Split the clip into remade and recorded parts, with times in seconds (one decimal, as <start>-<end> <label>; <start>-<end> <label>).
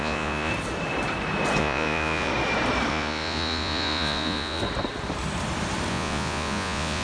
0.0-0.5 remade; 0.5-1.6 recorded; 1.6-2.3 remade; 2.3-2.9 recorded; 2.9-4.6 remade; 4.6-5.9 recorded; 5.9-7.0 remade